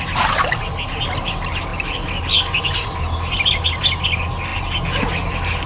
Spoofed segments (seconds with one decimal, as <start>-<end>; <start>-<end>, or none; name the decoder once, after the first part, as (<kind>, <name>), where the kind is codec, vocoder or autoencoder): none